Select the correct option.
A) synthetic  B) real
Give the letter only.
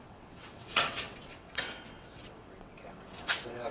A